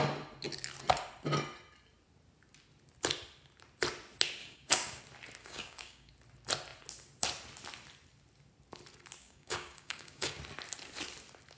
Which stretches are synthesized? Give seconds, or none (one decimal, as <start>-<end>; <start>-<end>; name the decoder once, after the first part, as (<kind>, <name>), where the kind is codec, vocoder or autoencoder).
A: 4.4-5.0 (codec, DAC); 5.4-6.1; 9.2-10.4